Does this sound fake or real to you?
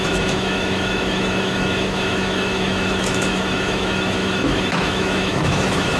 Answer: fake